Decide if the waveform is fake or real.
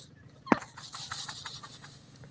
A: real